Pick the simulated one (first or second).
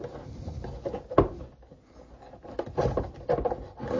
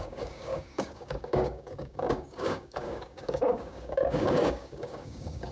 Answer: second